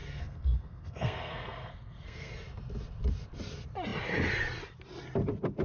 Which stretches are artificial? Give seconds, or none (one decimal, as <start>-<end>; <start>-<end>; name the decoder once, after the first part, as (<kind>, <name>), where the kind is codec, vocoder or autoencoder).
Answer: 0.0-2.3 (codec, SNAC)

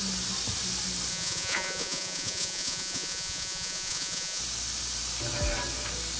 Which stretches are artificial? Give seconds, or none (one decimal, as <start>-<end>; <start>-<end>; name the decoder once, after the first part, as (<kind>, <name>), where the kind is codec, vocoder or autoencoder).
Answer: 1.1-4.4 (vocoder, Vocos)

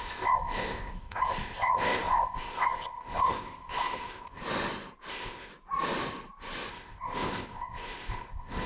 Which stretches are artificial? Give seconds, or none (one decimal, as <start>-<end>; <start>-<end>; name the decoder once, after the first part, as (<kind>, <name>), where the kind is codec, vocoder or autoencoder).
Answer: 0.0-4.4 (codec, ZipCodec); 5.1-5.5; 6.7-8.7

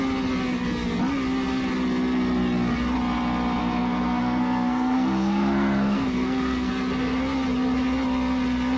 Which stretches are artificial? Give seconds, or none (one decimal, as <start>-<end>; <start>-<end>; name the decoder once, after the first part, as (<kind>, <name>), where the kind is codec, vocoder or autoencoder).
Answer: 3.6-6.7 (codec, SNAC)

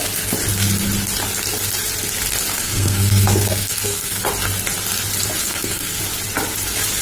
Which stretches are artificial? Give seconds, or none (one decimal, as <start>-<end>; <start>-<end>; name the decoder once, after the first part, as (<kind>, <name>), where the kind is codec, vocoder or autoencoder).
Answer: 2.5-4.2 (codec, SNAC); 5.4-6.0

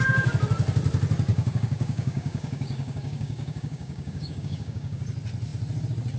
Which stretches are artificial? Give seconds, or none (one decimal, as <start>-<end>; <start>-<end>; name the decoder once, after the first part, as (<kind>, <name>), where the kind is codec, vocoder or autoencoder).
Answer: 1.3-5.0 (codec, DAC)

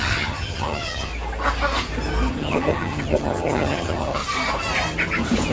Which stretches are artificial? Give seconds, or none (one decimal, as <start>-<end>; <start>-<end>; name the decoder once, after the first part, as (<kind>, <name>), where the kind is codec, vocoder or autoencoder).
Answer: 0.0-1.1 (vocoder, HiFi-GAN); 2.3-4.2